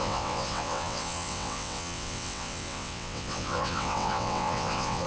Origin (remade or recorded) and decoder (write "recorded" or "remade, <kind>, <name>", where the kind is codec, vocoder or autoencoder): remade, vocoder, WaveNeXt